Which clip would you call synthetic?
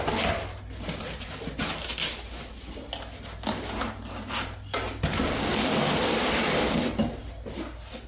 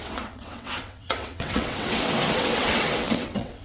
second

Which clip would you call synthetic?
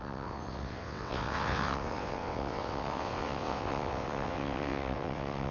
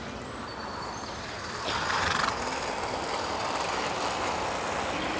first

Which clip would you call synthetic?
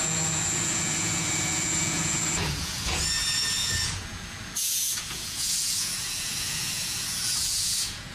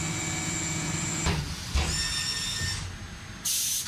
first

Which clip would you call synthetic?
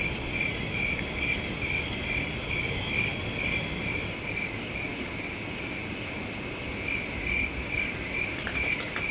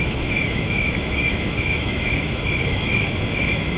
second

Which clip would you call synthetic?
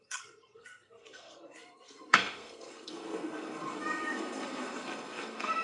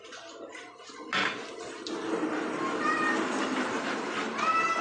first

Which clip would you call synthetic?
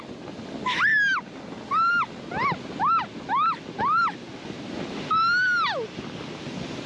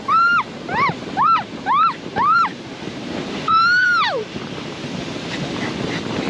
second